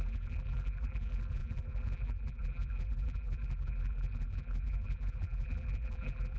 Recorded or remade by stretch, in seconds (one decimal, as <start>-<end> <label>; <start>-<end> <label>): 0.0-6.4 remade